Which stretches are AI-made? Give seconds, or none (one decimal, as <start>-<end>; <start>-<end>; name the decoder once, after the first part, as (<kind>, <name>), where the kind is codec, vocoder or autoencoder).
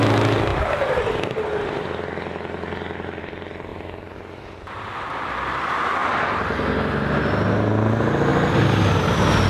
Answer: none